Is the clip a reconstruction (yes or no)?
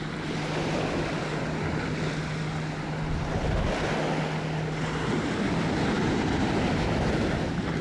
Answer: no